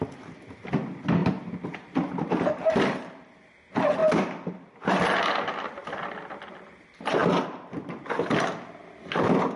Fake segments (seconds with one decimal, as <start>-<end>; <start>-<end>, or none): none